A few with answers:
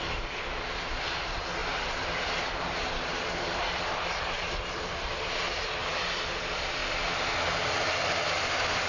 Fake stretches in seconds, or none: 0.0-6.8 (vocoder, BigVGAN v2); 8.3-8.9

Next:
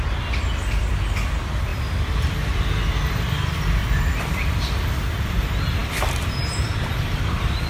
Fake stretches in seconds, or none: 1.7-2.5 (vocoder, BigVGAN v2); 3.8-4.7; 5.8-7.2

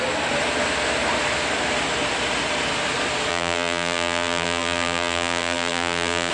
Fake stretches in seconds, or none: 3.3-6.3 (vocoder, BigVGAN v2)

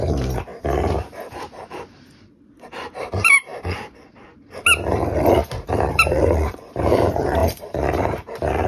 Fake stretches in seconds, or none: 0.0-0.5 (vocoder, BigVGAN v2); 1.4-3.5; 5.9-8.7

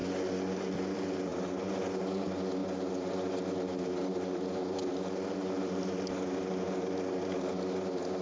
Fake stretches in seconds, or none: none

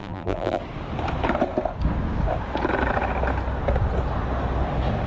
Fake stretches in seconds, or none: 0.0-0.6 (vocoder, BigVGAN v2)

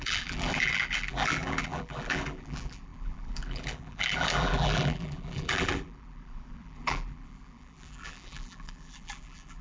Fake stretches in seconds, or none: 0.0-9.6 (vocoder, BigVGAN v2)